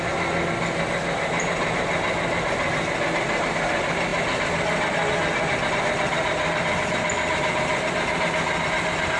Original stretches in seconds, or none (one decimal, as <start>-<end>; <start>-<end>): 0.0-9.2